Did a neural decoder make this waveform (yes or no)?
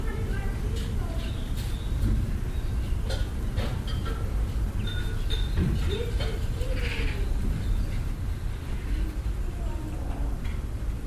no